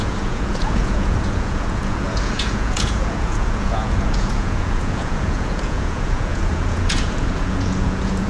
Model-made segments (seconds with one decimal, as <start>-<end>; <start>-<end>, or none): 0.0-8.3